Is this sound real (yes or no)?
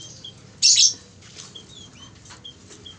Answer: yes